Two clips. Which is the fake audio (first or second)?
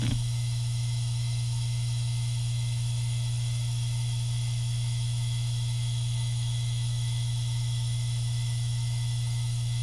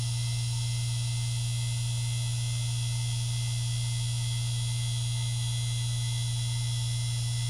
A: first